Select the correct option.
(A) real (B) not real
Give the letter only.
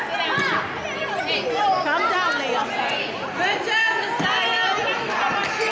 A